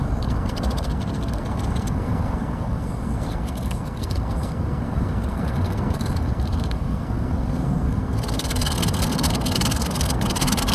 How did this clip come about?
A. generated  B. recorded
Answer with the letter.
A